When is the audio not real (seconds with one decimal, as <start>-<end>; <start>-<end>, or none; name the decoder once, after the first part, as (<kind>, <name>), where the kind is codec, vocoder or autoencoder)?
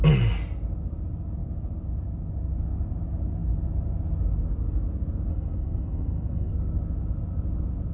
5.3-6.5 (codec, SNAC)